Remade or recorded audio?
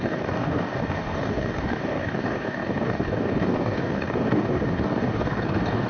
remade